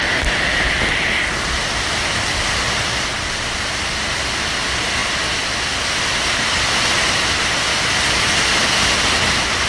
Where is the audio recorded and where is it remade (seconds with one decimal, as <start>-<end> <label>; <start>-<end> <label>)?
0.0-9.7 recorded